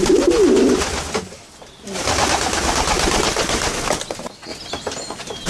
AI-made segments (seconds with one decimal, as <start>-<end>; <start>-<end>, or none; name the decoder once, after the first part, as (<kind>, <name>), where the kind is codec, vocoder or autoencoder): 4.5-5.5 (vocoder, BigVGAN v2)